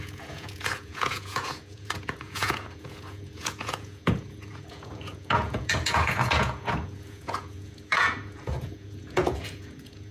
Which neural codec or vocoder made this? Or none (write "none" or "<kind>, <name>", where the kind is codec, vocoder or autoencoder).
vocoder, Vocos